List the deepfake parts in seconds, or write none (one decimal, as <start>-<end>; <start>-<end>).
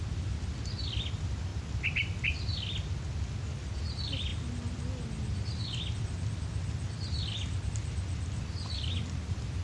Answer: none